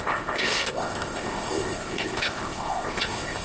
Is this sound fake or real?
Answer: fake